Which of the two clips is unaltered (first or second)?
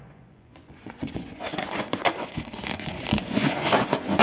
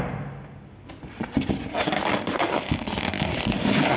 second